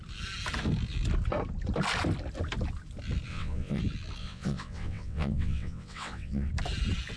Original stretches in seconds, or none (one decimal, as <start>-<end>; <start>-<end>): 0.0-3.3; 3.8-4.2; 6.5-7.2